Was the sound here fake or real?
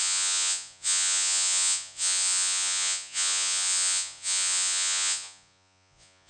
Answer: fake